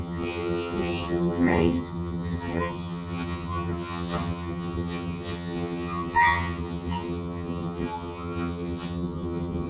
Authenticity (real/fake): fake